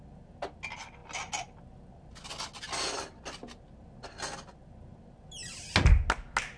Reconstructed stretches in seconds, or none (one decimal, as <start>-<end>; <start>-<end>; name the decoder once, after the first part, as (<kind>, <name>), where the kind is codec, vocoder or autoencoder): none